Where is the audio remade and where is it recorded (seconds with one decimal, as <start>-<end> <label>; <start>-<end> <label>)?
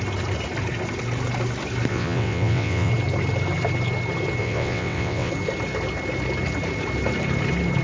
0.0-1.9 recorded; 1.9-2.9 remade; 2.9-4.4 recorded; 4.4-5.3 remade; 5.3-7.8 recorded